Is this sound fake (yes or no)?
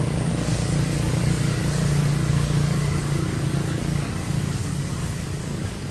yes